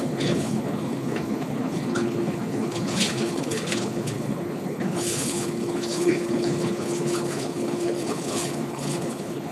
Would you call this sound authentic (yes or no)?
no